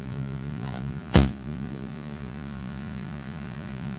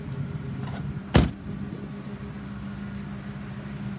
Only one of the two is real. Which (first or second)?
second